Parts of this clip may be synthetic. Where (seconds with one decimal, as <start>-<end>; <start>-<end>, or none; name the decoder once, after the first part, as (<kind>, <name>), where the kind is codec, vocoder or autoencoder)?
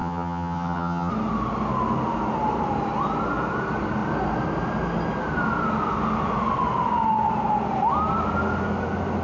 0.0-1.1 (vocoder, HiFi-GAN)